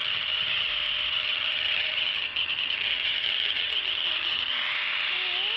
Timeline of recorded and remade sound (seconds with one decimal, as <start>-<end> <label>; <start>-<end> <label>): 0.0-0.7 remade; 0.7-1.1 recorded; 1.1-4.5 remade; 4.5-5.6 recorded